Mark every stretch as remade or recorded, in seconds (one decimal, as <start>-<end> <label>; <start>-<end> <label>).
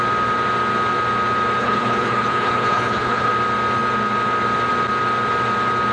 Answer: 0.0-1.6 recorded; 1.6-3.3 remade; 3.3-5.9 recorded